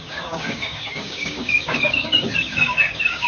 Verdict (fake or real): fake